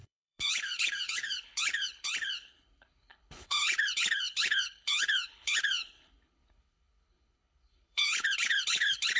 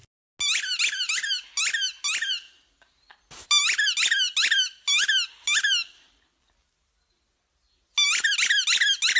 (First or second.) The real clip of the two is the second